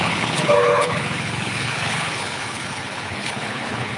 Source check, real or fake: fake